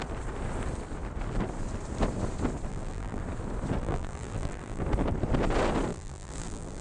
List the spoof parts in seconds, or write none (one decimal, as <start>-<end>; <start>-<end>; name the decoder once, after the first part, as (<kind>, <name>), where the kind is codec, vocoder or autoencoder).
2.7-3.2 (vocoder, BigVGAN v2); 3.8-4.8; 5.9-6.8